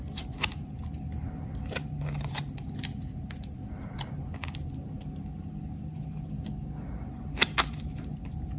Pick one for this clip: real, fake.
real